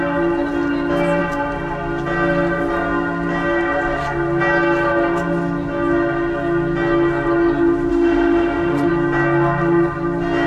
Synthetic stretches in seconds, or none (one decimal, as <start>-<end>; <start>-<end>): 7.9-8.9